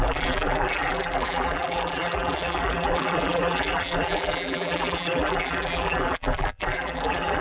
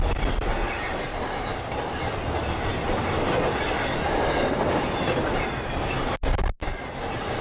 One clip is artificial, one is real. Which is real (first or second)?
second